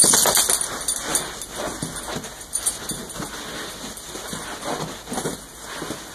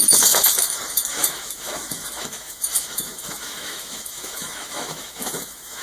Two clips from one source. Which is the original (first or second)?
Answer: first